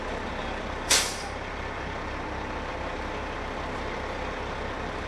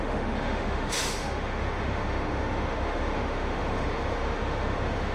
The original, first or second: first